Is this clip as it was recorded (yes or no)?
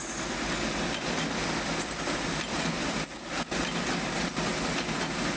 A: yes